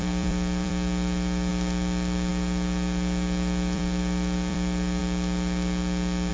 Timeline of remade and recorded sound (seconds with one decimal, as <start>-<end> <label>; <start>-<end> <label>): 0.0-1.5 remade; 1.5-2.3 recorded; 2.3-5.0 remade; 5.0-6.3 recorded